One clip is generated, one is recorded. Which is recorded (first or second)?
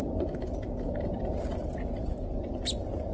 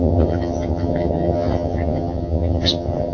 first